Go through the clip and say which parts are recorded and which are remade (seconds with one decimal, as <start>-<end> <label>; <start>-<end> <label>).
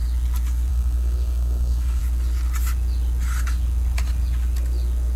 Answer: 0.0-0.7 recorded; 0.7-2.0 remade; 2.0-5.2 recorded